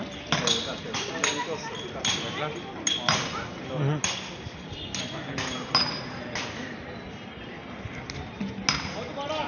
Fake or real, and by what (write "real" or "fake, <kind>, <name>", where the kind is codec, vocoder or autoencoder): real